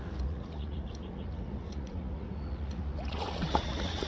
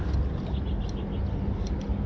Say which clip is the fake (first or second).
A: first